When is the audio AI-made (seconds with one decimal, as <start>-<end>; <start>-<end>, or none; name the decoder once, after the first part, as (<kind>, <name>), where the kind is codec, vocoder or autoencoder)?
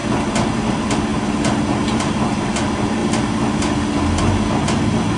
1.1-2.2 (vocoder, BigVGAN v2); 3.0-4.2